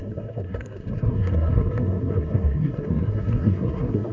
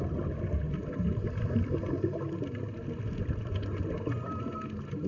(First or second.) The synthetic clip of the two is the first